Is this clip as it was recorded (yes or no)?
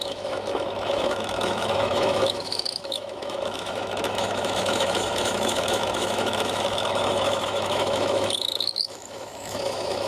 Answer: no